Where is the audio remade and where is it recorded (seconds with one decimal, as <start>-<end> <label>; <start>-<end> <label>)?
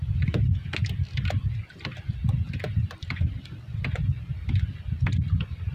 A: 0.0-5.7 recorded